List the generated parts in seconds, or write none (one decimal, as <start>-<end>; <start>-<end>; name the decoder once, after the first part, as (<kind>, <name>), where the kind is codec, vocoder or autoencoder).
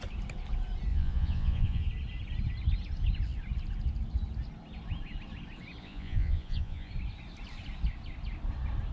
0.9-1.9 (vocoder, Vocos); 5.8-6.9